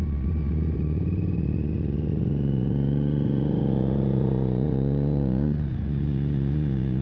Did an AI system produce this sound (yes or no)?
yes